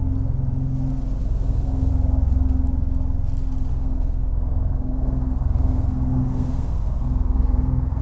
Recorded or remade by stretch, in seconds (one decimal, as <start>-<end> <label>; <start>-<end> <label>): 0.0-1.2 recorded; 1.2-1.9 remade; 1.9-3.7 recorded; 3.7-8.0 remade